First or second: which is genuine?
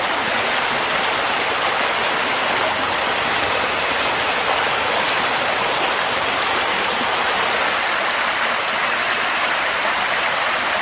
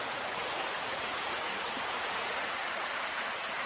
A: first